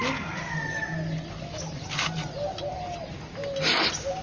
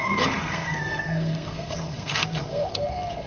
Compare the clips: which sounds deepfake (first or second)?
second